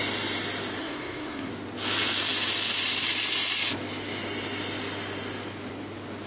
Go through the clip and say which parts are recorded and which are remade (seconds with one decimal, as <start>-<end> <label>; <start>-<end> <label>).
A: 0.0-0.8 recorded; 0.8-1.5 remade; 1.5-6.3 recorded